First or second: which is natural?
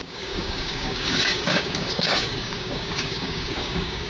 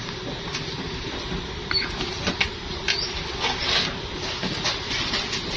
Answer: second